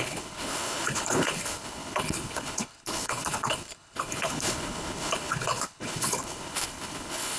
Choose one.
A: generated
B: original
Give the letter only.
A